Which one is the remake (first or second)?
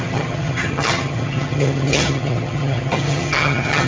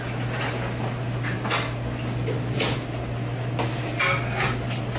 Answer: first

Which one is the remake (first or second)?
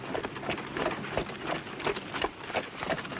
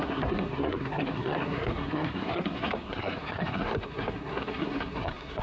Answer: second